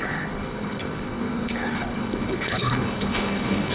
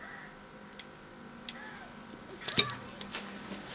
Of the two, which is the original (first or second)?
second